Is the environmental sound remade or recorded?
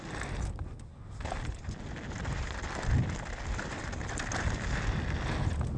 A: recorded